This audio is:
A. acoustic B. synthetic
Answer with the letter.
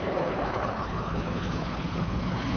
B